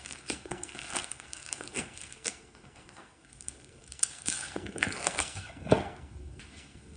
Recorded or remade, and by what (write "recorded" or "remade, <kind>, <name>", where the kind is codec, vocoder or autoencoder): remade, codec, SNAC